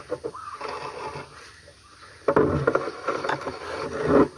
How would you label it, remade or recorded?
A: recorded